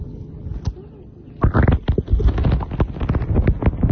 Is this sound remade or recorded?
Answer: recorded